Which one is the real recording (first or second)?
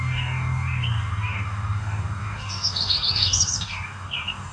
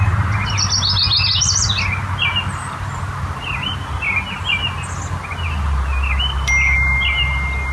second